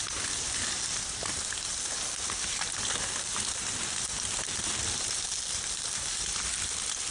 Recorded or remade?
recorded